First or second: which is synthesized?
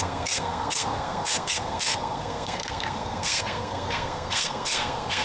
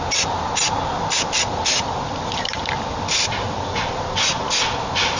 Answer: first